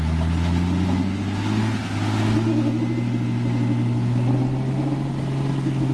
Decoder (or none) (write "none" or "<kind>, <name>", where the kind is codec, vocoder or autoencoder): none